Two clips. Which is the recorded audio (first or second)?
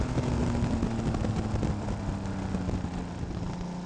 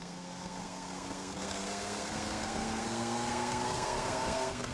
first